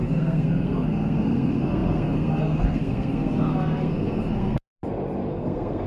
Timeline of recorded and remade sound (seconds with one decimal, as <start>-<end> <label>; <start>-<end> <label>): 0.0-4.7 remade; 4.7-5.3 recorded; 5.3-5.9 remade